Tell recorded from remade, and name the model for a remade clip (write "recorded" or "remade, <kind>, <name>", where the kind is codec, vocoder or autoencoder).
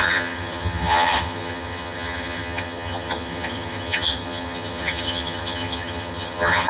remade, vocoder, HiFi-GAN